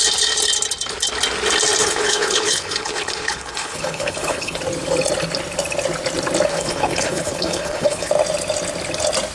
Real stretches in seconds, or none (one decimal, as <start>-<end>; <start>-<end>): 0.0-1.8; 4.6-6.5; 8.1-9.3